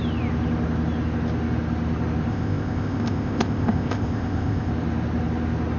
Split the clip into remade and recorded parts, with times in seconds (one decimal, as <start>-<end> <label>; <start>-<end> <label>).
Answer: 0.0-2.3 recorded; 2.3-4.7 remade; 4.7-5.8 recorded